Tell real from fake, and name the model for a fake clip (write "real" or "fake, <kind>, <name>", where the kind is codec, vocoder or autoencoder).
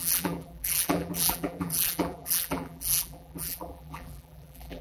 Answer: fake, vocoder, BigVGAN v2